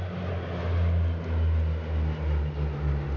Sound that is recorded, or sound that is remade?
recorded